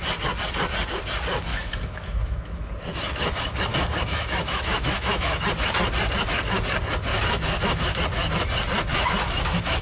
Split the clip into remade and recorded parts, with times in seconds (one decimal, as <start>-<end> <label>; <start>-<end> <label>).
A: 0.0-1.5 recorded; 1.5-2.7 remade; 2.7-4.1 recorded; 4.1-5.4 remade; 5.4-7.1 recorded; 7.1-7.9 remade; 7.9-8.9 recorded; 8.9-9.8 remade